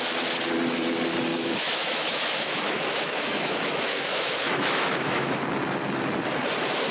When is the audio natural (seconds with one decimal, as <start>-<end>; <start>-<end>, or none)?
0.0-1.3; 5.4-6.9